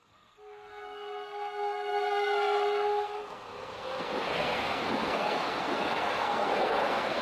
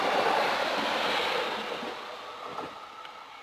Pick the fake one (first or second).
first